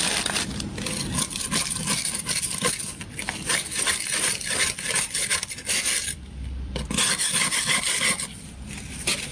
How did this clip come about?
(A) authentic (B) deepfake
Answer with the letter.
B